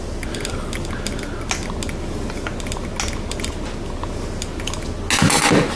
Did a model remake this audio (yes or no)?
no